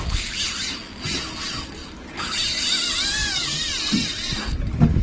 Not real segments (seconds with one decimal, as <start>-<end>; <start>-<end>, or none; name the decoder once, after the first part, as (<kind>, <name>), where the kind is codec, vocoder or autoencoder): none